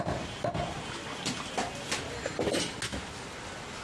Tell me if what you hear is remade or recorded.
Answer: recorded